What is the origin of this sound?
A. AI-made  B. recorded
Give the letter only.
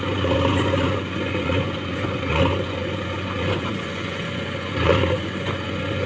A